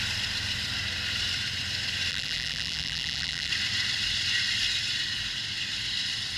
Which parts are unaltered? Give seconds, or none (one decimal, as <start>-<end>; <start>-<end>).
0.0-2.1; 3.5-6.4